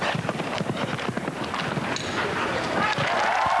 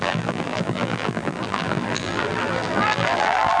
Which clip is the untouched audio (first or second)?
first